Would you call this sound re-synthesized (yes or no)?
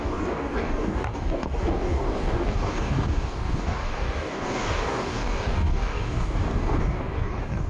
yes